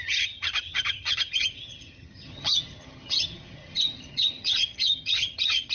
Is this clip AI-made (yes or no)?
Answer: yes